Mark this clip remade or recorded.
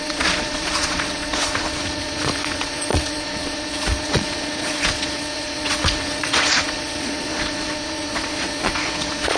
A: remade